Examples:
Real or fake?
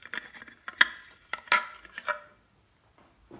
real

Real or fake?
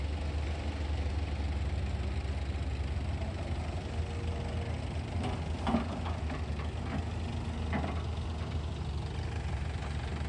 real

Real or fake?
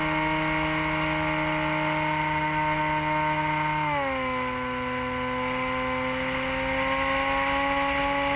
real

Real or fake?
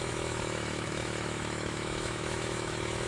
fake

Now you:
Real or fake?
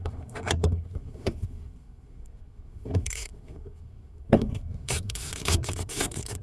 fake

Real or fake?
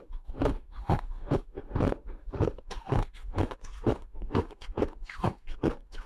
fake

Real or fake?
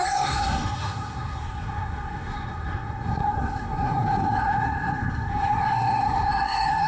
fake